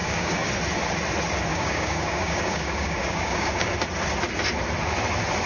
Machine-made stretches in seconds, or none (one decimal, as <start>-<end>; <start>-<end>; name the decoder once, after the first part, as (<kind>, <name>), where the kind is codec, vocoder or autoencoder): 0.0-0.5 (codec, DAC); 1.5-3.7